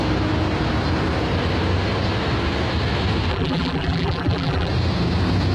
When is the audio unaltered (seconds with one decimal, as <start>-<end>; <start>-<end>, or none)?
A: 0.0-3.3; 4.7-5.5